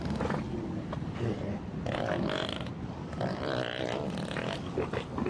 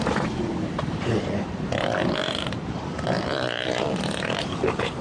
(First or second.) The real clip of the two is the first